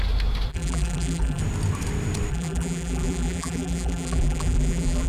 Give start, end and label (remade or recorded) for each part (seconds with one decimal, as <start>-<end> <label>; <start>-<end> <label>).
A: 0.0-0.5 recorded; 0.5-1.4 remade; 1.4-2.3 recorded; 2.3-5.1 remade